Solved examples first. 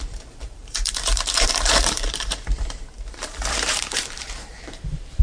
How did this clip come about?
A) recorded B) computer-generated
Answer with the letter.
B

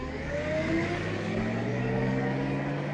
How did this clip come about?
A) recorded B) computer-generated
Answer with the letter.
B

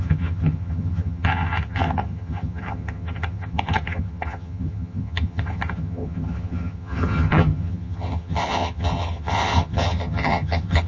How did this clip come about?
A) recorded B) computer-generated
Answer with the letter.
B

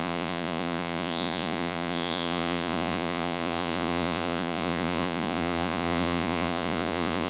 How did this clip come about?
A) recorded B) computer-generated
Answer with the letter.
B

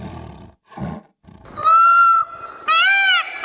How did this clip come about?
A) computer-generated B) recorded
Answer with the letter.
B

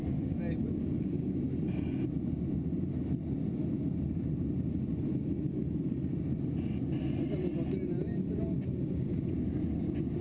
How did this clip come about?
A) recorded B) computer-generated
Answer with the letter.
A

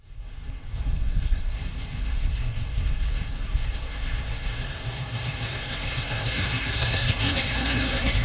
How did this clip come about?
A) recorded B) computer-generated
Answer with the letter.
B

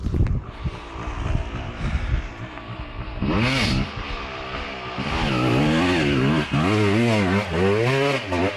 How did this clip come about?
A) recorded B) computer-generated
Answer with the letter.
A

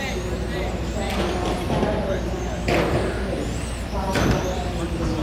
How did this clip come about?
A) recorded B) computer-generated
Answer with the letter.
A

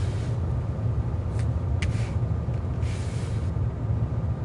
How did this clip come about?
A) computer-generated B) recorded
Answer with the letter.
B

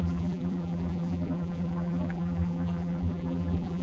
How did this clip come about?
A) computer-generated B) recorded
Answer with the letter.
A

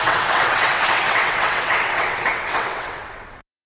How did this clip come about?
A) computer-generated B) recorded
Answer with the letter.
A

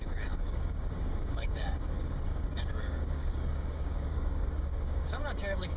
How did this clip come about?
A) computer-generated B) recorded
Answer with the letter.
A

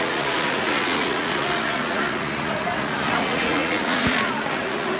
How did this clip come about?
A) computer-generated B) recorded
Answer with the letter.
A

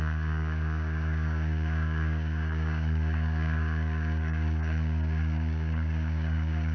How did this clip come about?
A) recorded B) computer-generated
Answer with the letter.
B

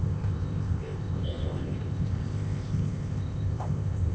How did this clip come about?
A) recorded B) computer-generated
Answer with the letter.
B